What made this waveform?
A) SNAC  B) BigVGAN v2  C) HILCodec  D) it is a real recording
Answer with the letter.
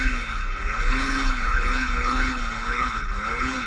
C